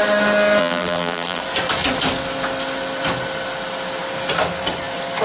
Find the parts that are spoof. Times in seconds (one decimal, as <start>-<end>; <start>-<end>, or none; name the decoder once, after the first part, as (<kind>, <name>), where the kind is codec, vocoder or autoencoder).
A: 0.6-1.4 (vocoder, BigVGAN v2)